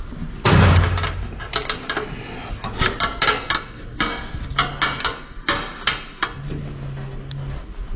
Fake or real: real